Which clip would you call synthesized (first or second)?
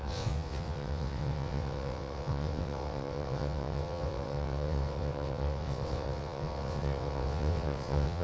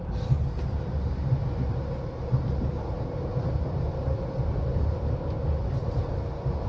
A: first